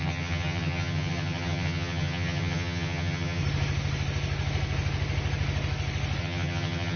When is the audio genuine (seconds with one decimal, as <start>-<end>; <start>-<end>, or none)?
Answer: 3.4-6.2